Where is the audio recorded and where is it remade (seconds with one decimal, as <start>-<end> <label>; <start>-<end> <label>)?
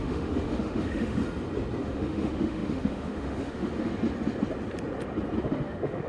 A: 0.0-1.2 remade; 1.2-1.8 recorded; 1.8-3.9 remade; 3.9-5.4 recorded; 5.4-6.1 remade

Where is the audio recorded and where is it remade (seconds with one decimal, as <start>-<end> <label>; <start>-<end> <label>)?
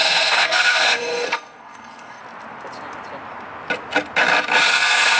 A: 0.0-2.2 remade; 2.2-4.6 recorded; 4.6-5.2 remade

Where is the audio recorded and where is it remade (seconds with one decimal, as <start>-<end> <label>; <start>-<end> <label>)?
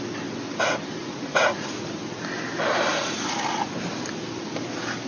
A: 0.0-1.0 recorded; 1.0-1.9 remade; 1.9-2.9 recorded; 2.9-3.7 remade; 3.7-5.1 recorded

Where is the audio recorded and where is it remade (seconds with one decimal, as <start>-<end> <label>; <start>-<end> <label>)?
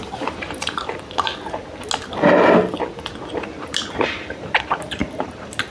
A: 0.0-1.3 remade; 1.3-3.2 recorded; 3.2-5.7 remade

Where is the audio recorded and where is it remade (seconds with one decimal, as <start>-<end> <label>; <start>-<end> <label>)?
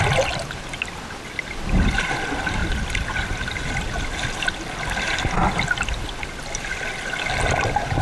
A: 0.0-8.0 recorded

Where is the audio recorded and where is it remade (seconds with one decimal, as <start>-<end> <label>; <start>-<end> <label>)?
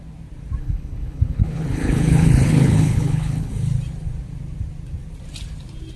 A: 0.0-0.6 recorded; 0.6-3.5 remade; 3.5-6.0 recorded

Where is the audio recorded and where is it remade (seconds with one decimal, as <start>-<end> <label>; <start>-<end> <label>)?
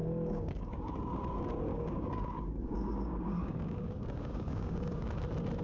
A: 0.0-1.0 remade; 1.0-1.7 recorded; 1.7-5.1 remade; 5.1-5.6 recorded